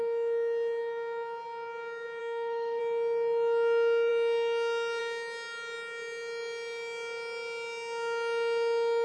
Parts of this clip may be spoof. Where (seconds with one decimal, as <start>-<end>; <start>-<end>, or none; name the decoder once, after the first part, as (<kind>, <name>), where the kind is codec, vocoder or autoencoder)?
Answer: 2.2-2.8 (autoencoder, DAC-VAE)